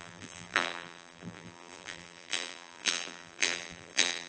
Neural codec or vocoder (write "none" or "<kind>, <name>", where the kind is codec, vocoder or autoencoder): vocoder, BigVGAN v2